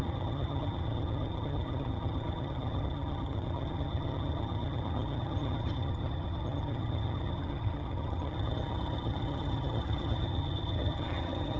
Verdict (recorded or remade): remade